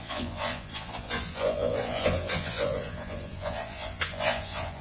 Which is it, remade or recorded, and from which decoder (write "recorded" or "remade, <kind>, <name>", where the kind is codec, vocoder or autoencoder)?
remade, vocoder, Vocos